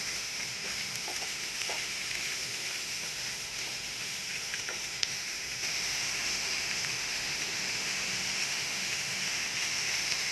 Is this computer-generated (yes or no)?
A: yes